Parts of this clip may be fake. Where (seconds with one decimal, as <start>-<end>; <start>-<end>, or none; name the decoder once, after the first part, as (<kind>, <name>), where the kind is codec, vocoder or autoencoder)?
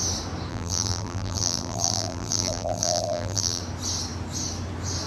0.5-3.6 (vocoder, BigVGAN v2)